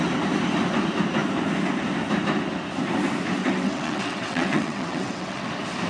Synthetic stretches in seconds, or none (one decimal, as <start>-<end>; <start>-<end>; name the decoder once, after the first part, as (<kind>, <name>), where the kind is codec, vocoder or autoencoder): 3.4-5.5 (vocoder, WaveNeXt)